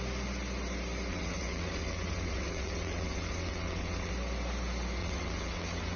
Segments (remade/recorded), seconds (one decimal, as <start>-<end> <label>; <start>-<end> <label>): 0.0-1.1 recorded; 1.1-4.1 remade; 4.1-5.0 recorded; 5.0-6.0 remade